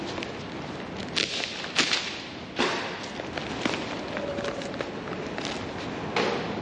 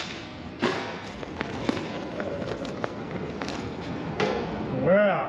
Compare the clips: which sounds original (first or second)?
first